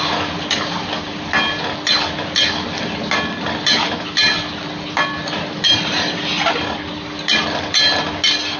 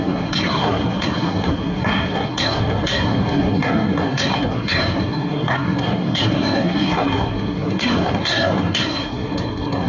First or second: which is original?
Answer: first